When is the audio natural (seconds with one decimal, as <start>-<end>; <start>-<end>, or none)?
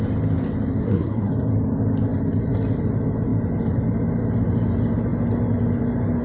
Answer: 0.0-0.8; 1.3-6.2